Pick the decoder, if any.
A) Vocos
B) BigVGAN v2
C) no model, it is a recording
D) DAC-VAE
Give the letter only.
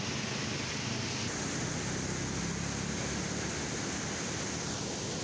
C